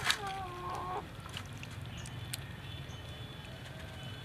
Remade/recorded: recorded